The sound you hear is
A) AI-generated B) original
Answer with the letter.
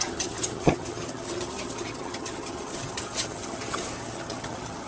A